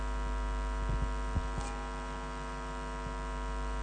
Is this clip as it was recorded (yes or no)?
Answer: yes